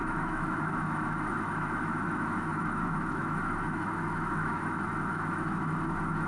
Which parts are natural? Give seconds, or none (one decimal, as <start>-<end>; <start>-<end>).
none